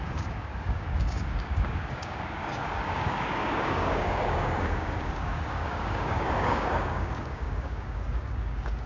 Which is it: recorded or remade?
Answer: remade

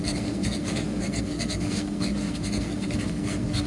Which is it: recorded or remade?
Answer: remade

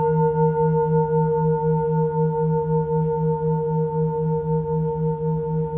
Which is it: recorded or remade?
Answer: recorded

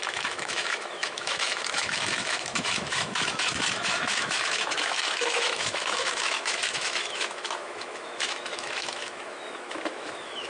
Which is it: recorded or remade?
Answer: remade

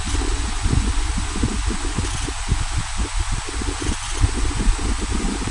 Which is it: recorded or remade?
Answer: remade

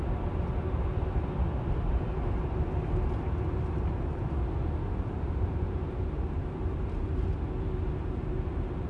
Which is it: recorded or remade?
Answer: recorded